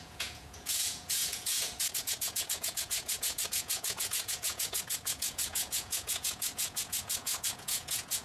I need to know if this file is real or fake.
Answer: fake